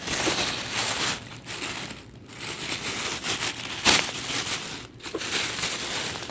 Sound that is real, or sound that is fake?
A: real